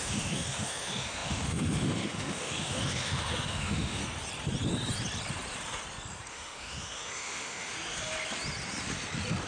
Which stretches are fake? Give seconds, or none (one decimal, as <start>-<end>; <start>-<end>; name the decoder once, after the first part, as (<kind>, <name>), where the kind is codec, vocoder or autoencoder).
0.0-4.0 (autoencoder, DAC-VAE); 6.3-7.7